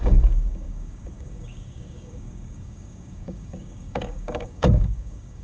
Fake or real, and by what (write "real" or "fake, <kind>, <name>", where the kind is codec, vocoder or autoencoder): fake, codec, DAC